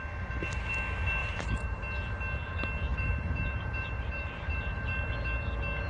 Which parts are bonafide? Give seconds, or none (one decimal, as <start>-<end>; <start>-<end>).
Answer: 0.0-1.2; 1.8-2.9; 4.9-5.9